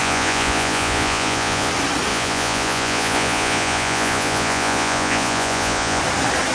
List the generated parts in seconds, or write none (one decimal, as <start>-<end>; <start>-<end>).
0.0-1.7; 2.1-6.0